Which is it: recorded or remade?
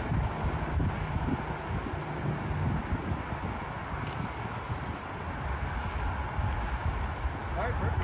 recorded